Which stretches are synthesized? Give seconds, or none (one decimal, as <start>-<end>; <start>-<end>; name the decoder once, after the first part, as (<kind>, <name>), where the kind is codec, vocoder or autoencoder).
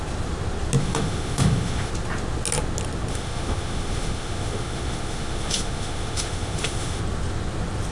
0.8-1.9 (autoencoder, DAC-VAE); 3.1-7.0